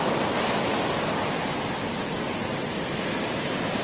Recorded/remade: recorded